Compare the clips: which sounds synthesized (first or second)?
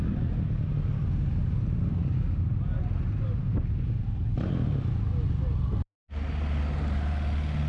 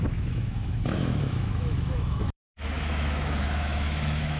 second